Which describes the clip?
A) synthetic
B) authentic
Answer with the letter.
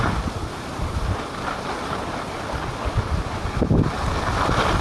B